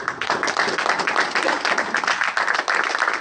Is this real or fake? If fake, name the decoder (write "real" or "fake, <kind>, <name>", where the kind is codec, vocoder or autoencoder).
real